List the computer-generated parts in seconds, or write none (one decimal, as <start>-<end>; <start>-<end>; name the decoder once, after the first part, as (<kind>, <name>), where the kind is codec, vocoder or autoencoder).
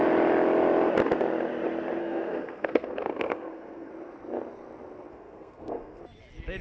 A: 2.0-3.9 (codec, SNAC); 5.1-6.0